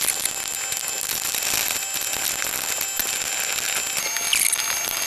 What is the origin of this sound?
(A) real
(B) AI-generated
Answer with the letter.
A